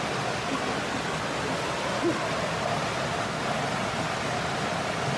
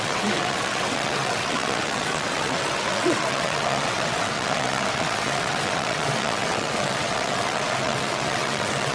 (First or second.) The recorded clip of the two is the first